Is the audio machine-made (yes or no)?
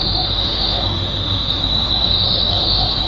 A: yes